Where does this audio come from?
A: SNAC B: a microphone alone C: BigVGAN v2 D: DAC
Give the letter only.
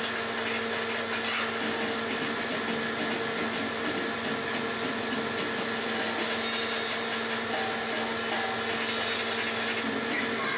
B